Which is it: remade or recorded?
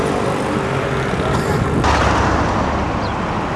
recorded